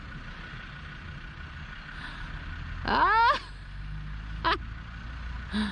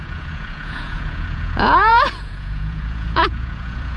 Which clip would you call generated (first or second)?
second